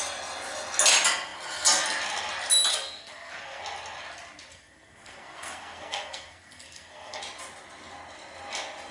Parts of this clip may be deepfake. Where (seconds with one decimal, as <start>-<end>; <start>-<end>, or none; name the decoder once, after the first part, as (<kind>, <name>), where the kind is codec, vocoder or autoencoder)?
2.7-3.6 (codec, SNAC); 4.5-7.2